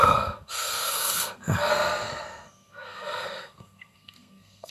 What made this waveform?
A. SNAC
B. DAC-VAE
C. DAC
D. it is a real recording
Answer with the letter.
A